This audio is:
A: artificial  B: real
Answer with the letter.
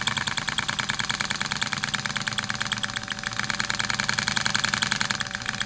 B